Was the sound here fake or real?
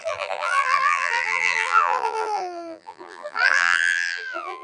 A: fake